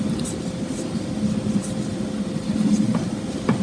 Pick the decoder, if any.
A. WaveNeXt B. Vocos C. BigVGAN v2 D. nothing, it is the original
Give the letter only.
D